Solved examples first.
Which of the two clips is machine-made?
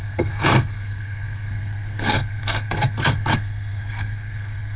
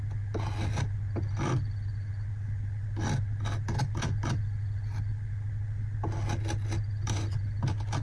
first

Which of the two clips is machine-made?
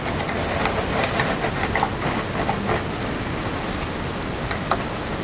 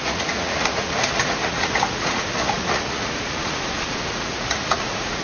second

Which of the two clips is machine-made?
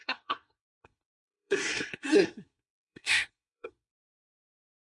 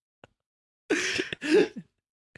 first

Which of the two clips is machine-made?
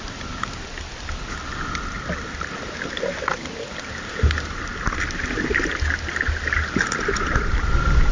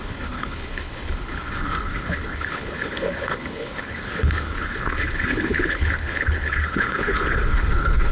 second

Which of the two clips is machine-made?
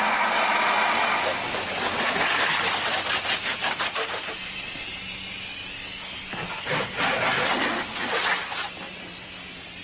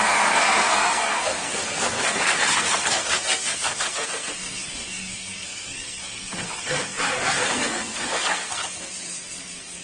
second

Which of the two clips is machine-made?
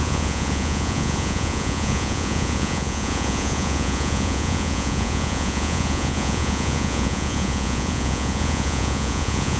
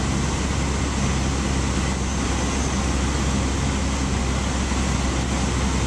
first